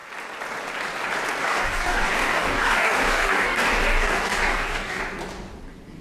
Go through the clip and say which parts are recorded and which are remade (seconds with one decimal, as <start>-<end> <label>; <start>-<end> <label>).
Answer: 0.0-1.4 recorded; 1.4-5.0 remade; 5.0-6.0 recorded